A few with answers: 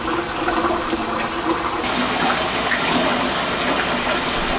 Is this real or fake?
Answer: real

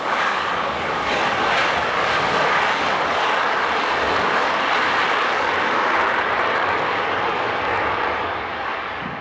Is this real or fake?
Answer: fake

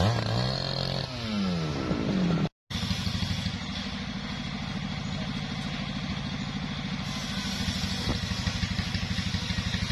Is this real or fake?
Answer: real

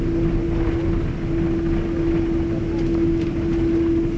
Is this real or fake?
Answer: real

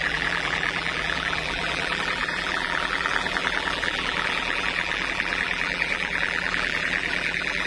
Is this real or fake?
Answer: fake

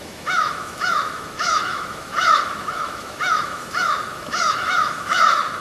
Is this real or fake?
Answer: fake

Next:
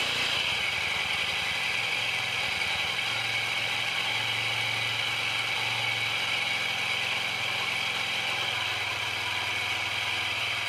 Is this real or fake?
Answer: real